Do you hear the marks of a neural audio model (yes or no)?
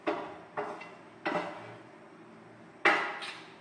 no